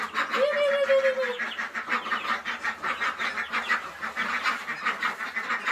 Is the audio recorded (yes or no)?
yes